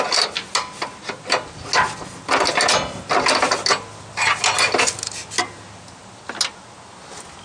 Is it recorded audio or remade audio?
recorded